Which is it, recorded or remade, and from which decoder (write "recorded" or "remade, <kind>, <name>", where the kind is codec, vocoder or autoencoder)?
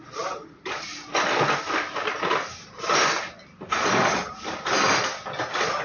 recorded